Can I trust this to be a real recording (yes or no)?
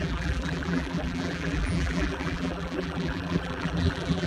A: no